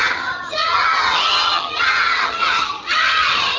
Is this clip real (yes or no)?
no